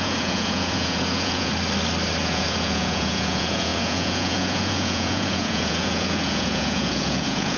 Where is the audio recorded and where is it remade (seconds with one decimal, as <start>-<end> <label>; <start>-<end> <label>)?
0.0-1.5 remade; 1.5-2.2 recorded; 2.2-7.6 remade